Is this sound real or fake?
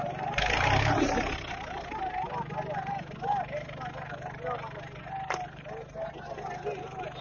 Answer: real